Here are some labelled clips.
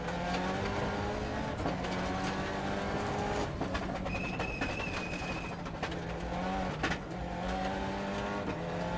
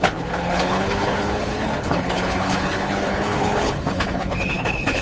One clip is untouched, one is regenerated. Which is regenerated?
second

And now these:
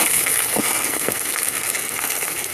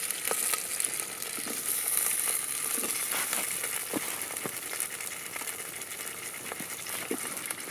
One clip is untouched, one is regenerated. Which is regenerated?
first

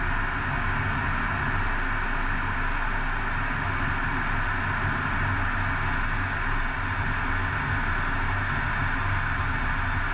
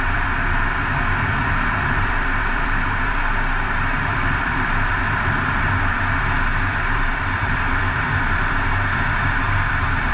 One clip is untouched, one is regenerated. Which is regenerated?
second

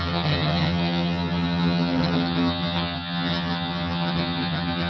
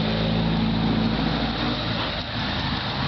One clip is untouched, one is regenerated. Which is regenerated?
first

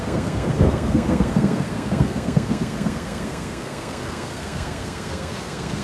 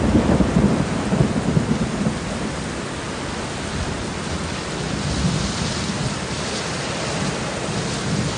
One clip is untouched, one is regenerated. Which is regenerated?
first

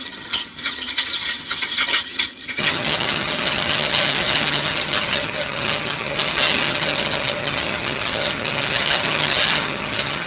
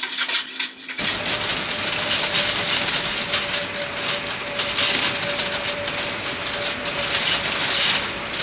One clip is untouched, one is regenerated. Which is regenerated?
first